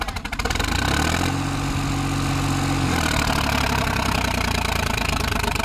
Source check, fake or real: real